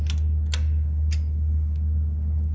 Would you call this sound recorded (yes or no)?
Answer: yes